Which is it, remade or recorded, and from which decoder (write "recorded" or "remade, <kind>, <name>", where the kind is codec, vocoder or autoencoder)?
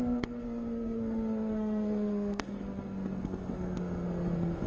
remade, codec, SNAC